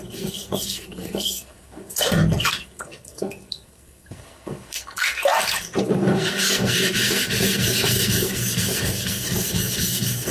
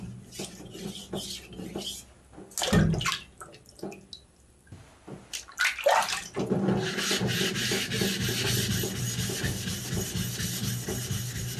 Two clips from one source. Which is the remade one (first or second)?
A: first